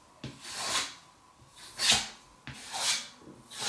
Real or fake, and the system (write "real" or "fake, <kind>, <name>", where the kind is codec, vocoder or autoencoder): real